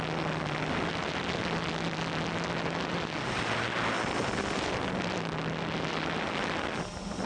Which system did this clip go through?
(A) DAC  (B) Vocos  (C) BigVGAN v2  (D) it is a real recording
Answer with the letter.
D